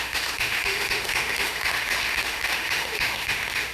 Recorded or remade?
remade